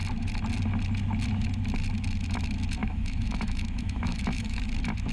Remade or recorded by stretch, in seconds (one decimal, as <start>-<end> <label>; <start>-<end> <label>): 0.0-2.8 recorded; 2.8-4.6 remade; 4.6-5.1 recorded